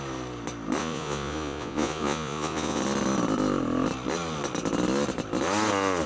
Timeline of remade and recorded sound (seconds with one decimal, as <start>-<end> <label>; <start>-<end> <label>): 0.0-0.8 recorded; 0.8-2.8 remade; 2.8-6.1 recorded